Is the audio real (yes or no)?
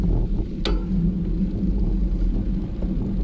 yes